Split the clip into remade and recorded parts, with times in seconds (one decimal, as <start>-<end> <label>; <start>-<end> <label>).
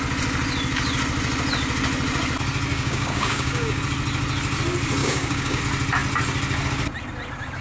0.0-2.7 recorded; 2.7-3.8 remade; 3.8-5.0 recorded; 5.0-5.6 remade; 5.6-7.6 recorded